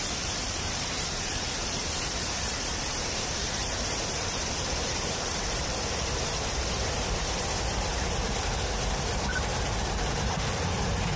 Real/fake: fake